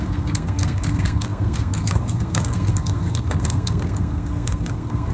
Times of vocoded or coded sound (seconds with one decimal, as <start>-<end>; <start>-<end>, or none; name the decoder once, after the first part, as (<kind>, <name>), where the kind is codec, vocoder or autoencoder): 0.0-5.1 (codec, SNAC)